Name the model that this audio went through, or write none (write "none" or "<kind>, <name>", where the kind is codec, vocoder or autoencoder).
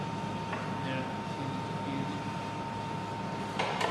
none